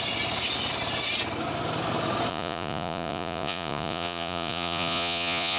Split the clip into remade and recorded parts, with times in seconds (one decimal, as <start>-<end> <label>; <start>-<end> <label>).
0.0-2.3 recorded; 2.3-5.6 remade